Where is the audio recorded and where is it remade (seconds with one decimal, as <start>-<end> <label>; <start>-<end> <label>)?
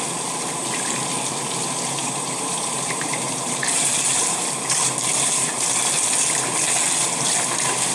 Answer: 0.0-2.0 recorded; 2.0-5.8 remade; 5.8-7.9 recorded